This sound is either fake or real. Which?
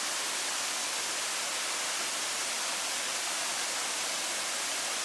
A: real